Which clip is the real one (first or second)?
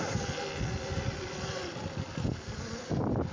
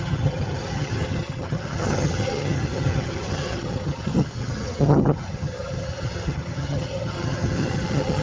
first